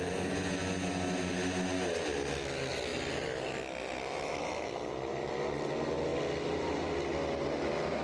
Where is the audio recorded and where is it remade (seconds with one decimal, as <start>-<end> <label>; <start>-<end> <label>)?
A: 0.0-8.0 recorded